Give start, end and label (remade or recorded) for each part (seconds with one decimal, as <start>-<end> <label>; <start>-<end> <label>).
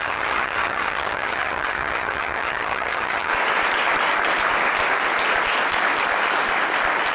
0.0-3.3 remade; 3.3-7.1 recorded